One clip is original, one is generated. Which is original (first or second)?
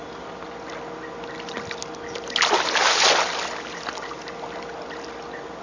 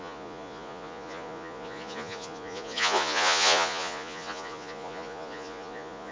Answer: first